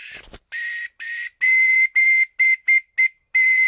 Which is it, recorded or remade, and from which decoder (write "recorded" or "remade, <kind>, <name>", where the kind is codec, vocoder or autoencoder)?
recorded